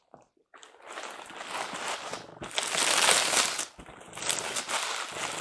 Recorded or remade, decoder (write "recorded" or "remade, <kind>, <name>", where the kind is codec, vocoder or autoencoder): recorded